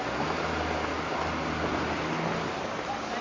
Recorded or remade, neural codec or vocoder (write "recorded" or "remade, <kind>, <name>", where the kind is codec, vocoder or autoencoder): recorded